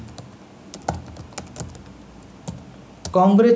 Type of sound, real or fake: real